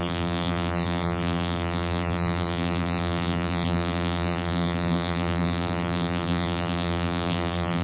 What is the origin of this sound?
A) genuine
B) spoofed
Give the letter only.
B